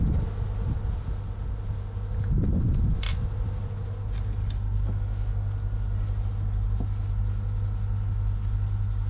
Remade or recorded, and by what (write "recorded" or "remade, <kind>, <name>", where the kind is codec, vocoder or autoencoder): recorded